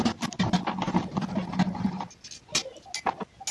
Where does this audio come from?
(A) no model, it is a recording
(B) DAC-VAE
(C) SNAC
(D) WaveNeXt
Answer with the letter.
A